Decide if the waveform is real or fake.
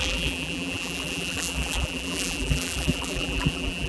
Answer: fake